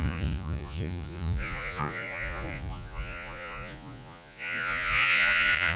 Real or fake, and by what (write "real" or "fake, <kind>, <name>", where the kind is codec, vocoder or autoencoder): fake, vocoder, Vocos